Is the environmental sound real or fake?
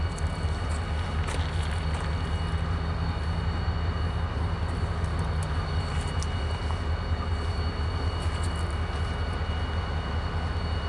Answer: real